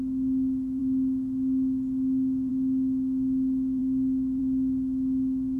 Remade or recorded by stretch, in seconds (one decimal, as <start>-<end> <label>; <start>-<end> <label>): 0.0-5.6 recorded